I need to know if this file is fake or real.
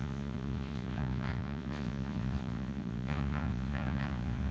fake